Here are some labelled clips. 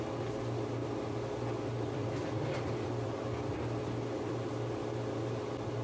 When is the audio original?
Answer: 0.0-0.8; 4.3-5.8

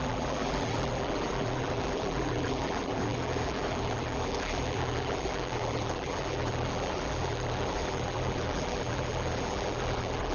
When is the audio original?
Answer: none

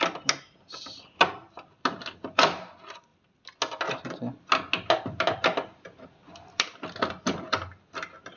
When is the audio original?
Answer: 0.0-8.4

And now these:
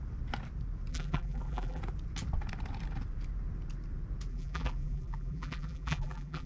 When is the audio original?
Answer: 0.0-0.9; 1.8-4.3

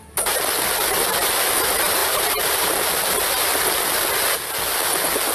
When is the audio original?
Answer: 0.0-2.0; 3.1-5.3

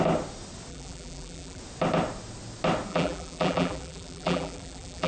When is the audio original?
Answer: 0.0-0.7; 1.6-2.9

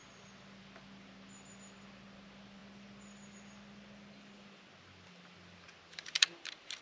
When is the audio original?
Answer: 0.0-6.8

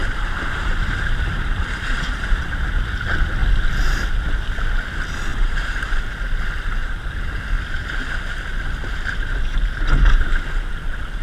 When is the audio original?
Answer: 2.6-5.3; 6.0-6.8; 7.4-11.2